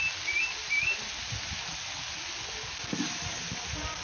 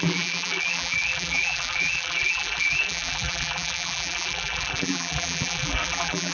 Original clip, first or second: first